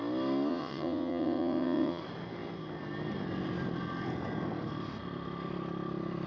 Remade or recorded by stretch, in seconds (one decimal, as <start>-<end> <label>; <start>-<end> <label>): 0.0-0.5 recorded; 0.5-2.0 remade; 2.0-6.3 recorded